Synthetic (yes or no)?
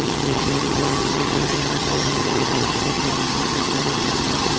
yes